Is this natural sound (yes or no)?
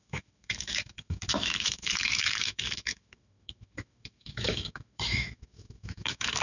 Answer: no